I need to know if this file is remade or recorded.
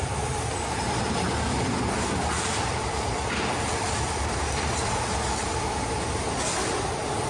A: remade